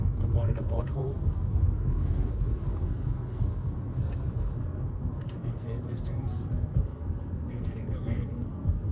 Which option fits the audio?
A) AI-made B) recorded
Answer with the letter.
A